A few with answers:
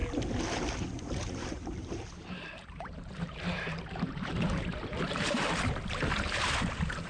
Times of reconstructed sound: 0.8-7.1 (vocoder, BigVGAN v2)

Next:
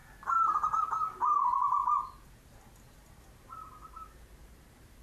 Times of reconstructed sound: 0.0-0.9 (vocoder, BigVGAN v2); 1.8-5.0

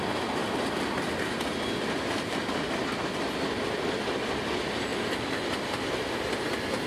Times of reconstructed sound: 0.4-4.0 (vocoder, BigVGAN v2)

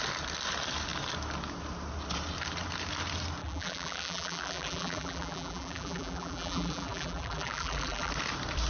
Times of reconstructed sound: 3.4-8.1 (vocoder, BigVGAN v2)